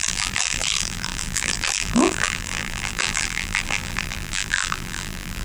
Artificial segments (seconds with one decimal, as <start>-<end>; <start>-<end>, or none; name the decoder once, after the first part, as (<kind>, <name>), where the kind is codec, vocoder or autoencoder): 0.0-5.4 (vocoder, BigVGAN v2)